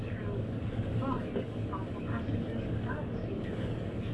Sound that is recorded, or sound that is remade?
remade